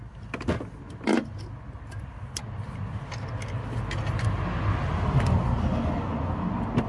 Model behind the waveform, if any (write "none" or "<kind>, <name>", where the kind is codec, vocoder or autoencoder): none